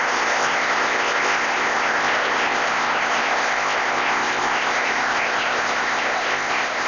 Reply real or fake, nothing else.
fake